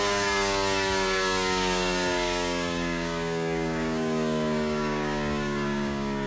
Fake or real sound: fake